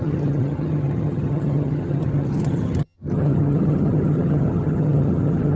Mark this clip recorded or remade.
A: remade